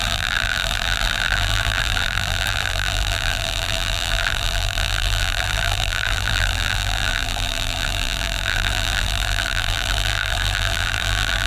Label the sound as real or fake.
fake